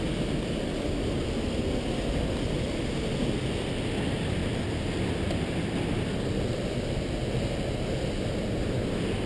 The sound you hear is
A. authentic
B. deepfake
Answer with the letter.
A